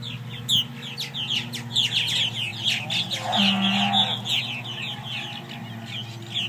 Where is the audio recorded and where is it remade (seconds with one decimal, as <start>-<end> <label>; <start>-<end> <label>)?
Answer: 0.0-6.5 recorded